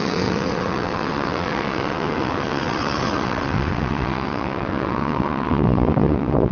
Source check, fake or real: fake